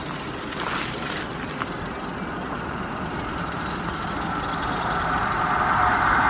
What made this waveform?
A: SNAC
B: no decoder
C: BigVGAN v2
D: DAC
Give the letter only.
B